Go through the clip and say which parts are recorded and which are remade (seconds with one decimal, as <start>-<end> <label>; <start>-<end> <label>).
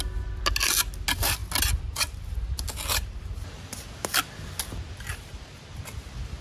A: 0.0-6.4 recorded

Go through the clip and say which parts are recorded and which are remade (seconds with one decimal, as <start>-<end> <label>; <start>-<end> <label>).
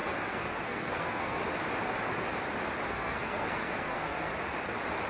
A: 0.0-1.4 remade; 1.4-2.9 recorded; 2.9-4.3 remade; 4.3-5.1 recorded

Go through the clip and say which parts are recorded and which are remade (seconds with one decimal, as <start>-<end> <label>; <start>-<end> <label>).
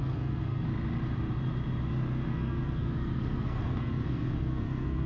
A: 0.0-0.7 remade; 0.7-2.3 recorded; 2.3-5.1 remade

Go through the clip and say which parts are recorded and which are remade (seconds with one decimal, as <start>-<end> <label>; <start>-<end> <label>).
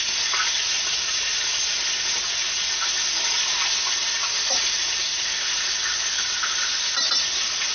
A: 0.0-7.7 recorded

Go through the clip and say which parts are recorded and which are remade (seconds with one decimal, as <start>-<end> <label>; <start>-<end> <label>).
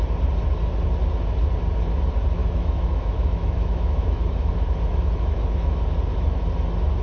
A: 0.0-2.4 recorded; 2.4-4.5 remade; 4.5-4.9 recorded; 4.9-5.8 remade; 5.8-7.0 recorded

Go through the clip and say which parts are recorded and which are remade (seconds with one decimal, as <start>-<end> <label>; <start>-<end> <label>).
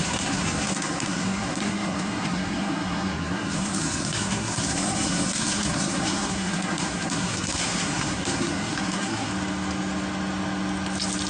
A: 0.0-9.3 remade; 9.3-11.3 recorded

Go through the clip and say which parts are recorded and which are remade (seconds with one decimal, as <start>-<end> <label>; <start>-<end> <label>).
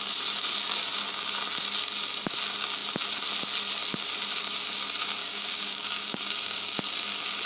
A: 0.0-5.2 recorded; 5.2-6.8 remade; 6.8-7.5 recorded